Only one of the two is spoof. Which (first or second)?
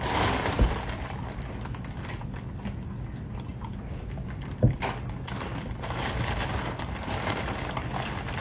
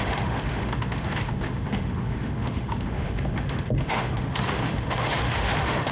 second